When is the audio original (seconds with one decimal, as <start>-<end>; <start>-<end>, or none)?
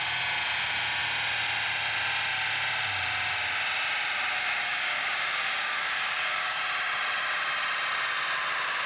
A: 0.0-4.3; 6.6-8.9